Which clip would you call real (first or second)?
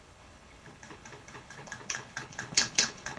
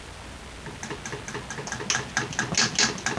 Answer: second